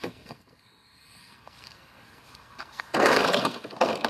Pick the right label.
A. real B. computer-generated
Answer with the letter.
B